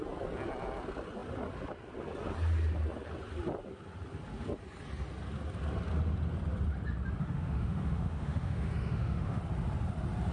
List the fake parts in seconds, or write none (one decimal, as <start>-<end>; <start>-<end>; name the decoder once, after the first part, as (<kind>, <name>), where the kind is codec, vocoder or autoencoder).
7.2-9.4 (autoencoder, DAC-VAE)